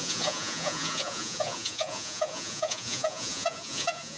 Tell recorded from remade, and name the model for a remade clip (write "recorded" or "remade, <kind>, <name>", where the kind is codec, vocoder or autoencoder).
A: remade, vocoder, Vocos